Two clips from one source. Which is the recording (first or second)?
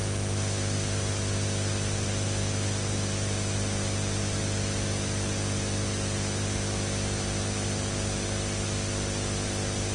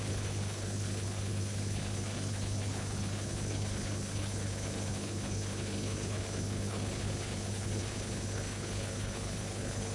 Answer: first